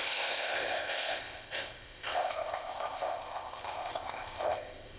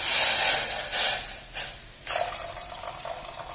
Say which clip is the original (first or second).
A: second